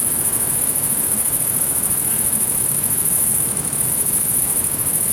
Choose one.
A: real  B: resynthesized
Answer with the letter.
B